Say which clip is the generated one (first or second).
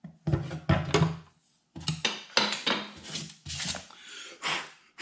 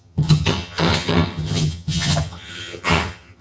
second